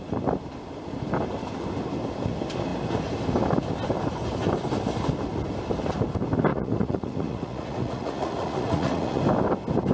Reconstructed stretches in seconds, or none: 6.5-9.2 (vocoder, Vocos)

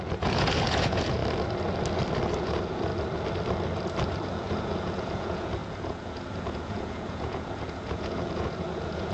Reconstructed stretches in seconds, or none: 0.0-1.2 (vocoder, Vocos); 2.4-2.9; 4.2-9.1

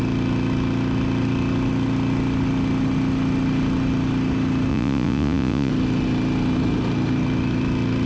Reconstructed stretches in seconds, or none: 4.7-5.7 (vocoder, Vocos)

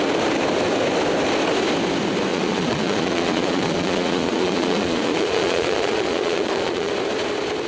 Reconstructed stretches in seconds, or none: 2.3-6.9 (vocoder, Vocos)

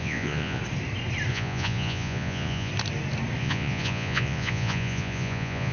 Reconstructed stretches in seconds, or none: 0.0-0.6 (vocoder, Vocos); 1.3-2.7; 3.4-5.7